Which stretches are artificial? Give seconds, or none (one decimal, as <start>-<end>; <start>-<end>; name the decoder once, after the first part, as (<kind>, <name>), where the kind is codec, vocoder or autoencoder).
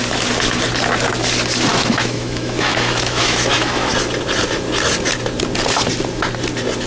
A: 1.7-3.9 (autoencoder, DAC-VAE)